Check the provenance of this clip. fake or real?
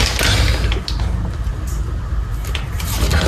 real